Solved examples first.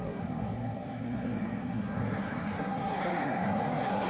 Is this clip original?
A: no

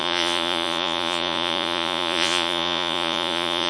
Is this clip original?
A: no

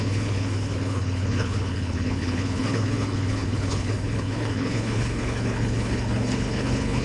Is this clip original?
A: no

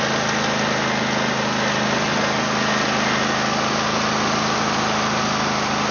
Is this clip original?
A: yes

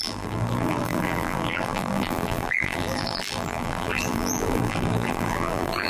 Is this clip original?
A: no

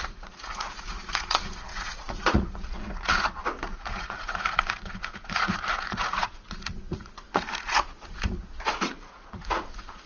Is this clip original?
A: no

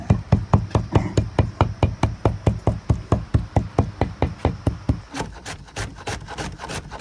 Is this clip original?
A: yes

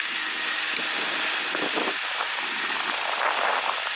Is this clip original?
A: yes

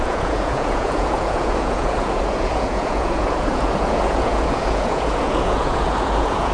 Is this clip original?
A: no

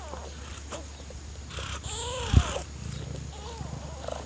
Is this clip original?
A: yes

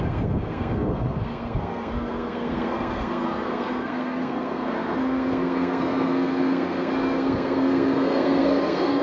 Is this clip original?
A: no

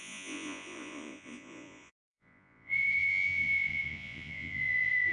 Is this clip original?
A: no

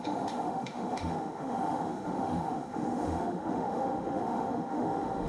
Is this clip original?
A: no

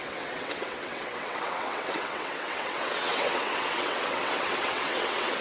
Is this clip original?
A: no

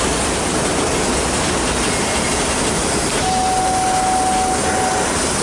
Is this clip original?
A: yes